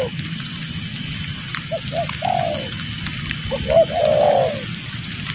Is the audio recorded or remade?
recorded